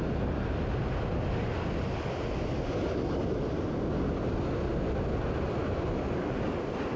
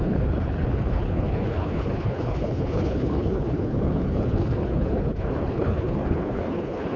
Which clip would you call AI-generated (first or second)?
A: second